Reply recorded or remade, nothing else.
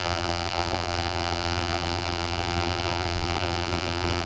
remade